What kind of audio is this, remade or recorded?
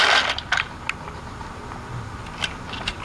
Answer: recorded